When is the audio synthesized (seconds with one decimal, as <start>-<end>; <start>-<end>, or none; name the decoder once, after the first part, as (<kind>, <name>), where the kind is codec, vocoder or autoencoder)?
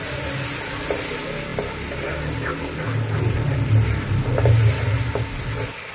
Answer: none